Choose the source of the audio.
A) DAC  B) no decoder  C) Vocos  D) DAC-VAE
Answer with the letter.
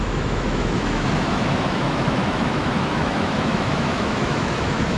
D